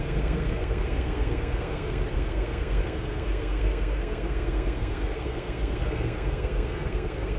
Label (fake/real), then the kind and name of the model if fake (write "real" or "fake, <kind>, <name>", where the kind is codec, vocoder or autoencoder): fake, codec, SNAC